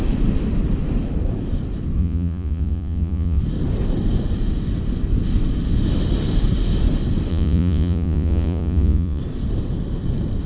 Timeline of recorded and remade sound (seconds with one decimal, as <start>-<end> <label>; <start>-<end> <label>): 0.0-2.0 recorded; 2.0-3.4 remade; 3.4-7.3 recorded; 7.3-9.2 remade; 9.2-10.5 recorded